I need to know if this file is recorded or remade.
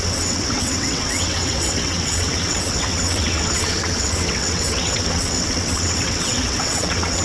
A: remade